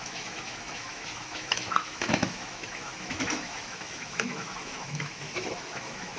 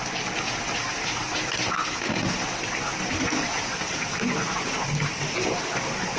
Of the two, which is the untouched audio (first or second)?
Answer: second